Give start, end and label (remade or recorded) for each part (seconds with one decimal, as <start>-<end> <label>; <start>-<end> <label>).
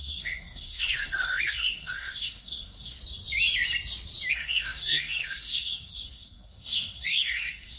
0.0-3.0 remade; 3.0-4.3 recorded; 4.3-7.8 remade